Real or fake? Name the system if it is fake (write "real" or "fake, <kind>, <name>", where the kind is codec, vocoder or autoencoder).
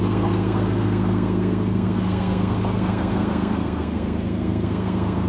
fake, codec, SNAC